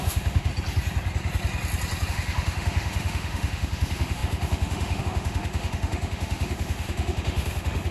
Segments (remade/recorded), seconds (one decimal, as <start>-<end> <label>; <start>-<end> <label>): 0.0-0.5 remade; 0.5-2.1 recorded; 2.1-7.9 remade